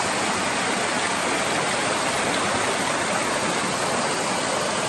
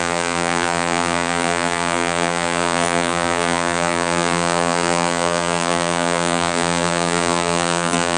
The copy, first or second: second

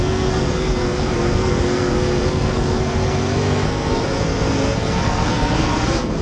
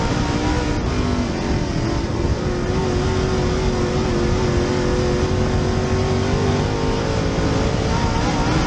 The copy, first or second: first